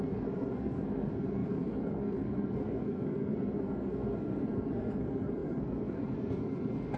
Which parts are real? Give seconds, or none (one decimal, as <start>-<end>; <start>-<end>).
none